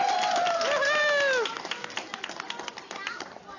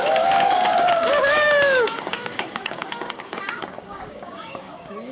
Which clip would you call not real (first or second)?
second